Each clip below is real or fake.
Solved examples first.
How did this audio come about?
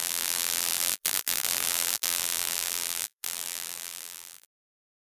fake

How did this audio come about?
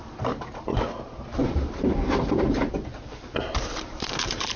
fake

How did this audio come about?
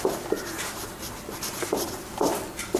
fake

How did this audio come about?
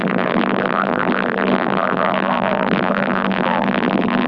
fake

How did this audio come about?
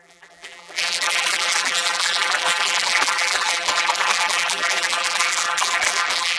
fake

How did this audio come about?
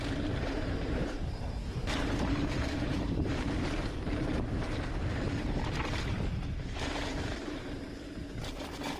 fake